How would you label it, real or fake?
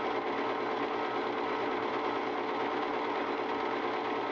real